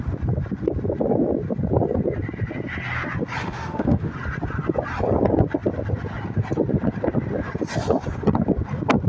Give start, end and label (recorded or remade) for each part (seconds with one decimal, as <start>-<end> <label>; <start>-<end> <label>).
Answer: 0.0-3.4 recorded; 3.4-4.1 remade; 4.1-9.1 recorded